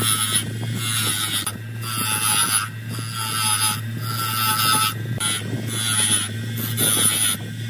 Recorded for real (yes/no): yes